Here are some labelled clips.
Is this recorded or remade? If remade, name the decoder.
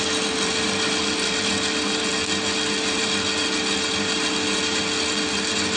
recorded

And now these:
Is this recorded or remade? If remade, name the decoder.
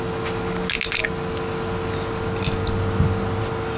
recorded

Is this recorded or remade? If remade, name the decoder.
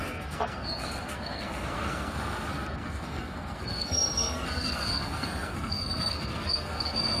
remade, codec, SNAC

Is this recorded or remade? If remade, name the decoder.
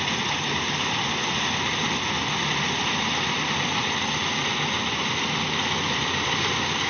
recorded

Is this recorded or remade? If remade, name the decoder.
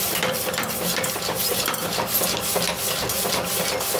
recorded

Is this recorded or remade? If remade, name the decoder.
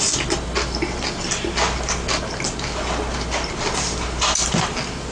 recorded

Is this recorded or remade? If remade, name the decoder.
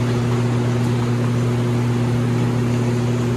recorded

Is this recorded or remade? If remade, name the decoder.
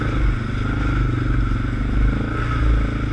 recorded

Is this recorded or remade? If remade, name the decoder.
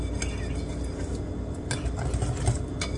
recorded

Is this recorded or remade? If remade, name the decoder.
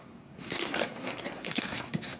remade, codec, SNAC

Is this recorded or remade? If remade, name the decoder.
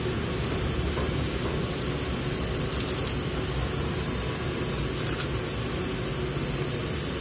recorded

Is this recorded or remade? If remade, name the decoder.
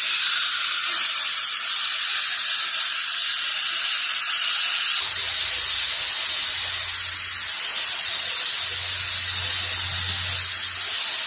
recorded